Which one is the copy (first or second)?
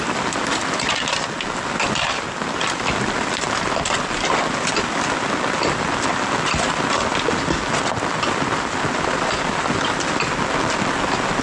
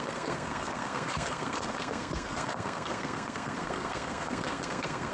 second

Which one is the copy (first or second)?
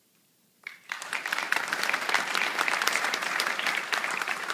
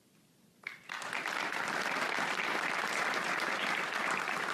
first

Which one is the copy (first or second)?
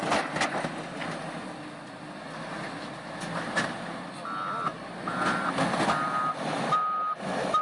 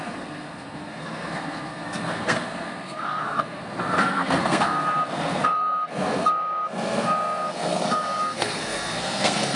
second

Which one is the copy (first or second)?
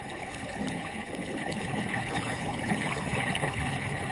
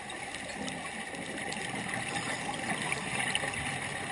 first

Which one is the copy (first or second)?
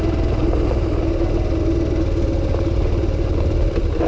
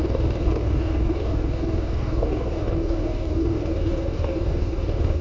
second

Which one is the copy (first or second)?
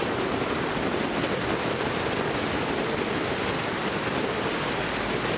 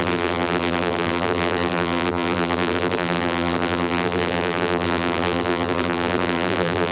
second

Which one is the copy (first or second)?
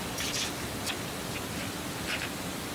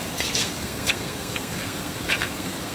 second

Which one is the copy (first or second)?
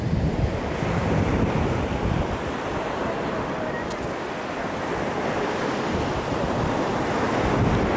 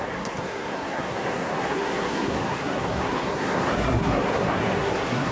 second